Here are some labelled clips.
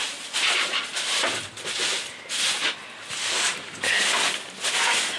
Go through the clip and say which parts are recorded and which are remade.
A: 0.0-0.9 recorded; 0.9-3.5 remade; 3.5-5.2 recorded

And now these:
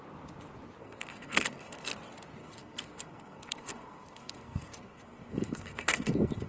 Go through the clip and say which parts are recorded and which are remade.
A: 0.0-0.8 recorded; 0.8-1.9 remade; 1.9-2.4 recorded; 2.4-6.5 remade

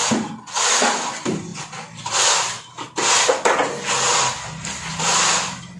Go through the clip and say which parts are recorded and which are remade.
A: 0.0-5.8 recorded

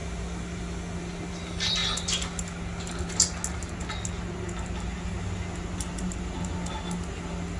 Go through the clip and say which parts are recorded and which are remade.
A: 0.0-7.6 recorded